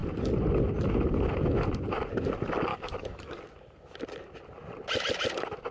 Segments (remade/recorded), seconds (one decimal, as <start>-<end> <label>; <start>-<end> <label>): 0.0-2.7 recorded; 2.7-3.4 remade; 3.4-5.7 recorded